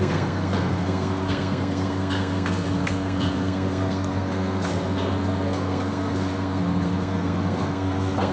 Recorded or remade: remade